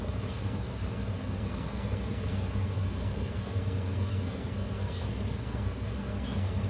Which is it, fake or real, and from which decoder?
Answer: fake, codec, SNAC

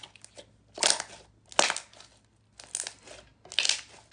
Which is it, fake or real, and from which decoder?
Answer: real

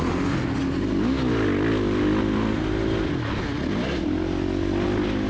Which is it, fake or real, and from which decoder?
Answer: real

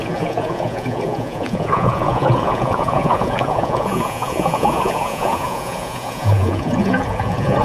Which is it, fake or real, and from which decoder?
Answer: fake, vocoder, Vocos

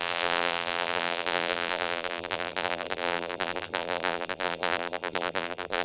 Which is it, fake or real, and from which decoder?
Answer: fake, vocoder, BigVGAN v2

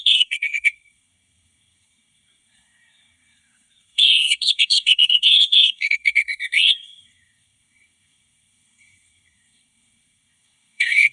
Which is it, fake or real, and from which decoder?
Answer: fake, codec, SNAC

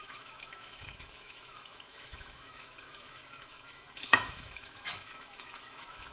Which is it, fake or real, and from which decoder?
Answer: fake, autoencoder, DAC-VAE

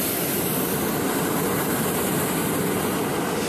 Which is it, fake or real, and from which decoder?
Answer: real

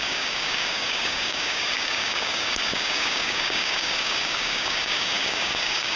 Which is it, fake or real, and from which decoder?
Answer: fake, codec, DAC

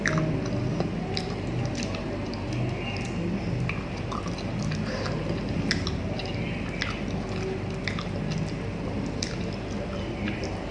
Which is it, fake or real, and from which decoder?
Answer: real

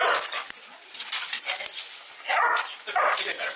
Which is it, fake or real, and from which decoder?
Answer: real